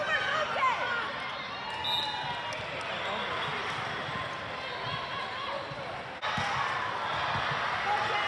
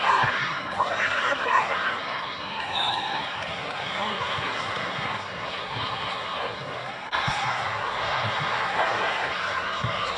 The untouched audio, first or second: first